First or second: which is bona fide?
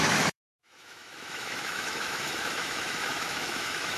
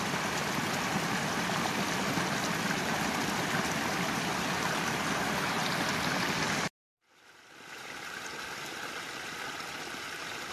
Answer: second